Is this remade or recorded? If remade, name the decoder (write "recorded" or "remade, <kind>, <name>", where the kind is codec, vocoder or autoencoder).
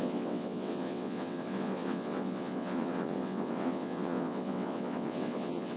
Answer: remade, vocoder, WaveNeXt